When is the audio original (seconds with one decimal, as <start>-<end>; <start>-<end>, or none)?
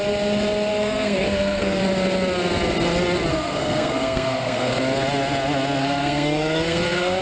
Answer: 0.0-0.7; 1.8-3.3; 4.7-5.8